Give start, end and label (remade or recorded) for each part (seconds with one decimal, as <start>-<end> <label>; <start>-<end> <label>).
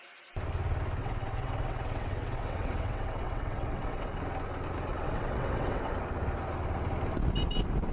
0.0-1.0 recorded; 1.0-4.2 remade; 4.2-4.9 recorded; 4.9-5.9 remade; 5.9-7.9 recorded